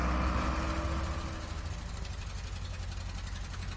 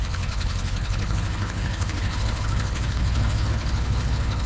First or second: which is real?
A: first